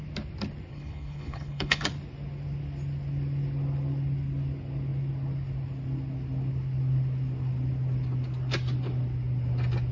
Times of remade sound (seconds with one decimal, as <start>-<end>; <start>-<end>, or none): 0.7-1.8